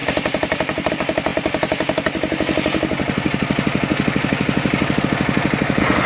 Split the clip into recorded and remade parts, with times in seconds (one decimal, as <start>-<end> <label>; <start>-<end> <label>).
0.0-0.9 remade; 0.9-6.1 recorded